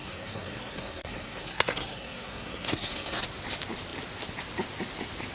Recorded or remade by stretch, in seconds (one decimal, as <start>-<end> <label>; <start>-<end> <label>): 0.0-3.2 remade; 3.2-5.3 recorded